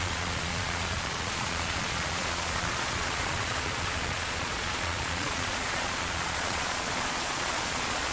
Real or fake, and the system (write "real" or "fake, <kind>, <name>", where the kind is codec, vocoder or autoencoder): fake, vocoder, Vocos